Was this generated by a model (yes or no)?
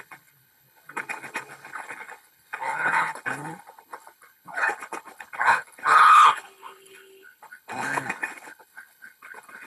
yes